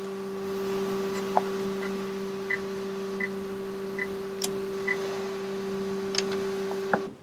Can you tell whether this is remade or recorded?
recorded